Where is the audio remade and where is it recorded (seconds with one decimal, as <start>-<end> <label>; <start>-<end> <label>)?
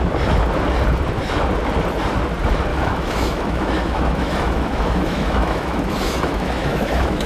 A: 0.0-2.7 recorded; 2.7-7.3 remade